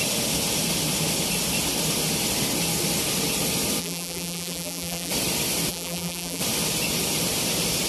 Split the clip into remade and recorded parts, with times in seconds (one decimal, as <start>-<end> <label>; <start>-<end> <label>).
0.0-3.8 recorded; 3.8-5.1 remade; 5.1-5.7 recorded; 5.7-6.4 remade; 6.4-7.9 recorded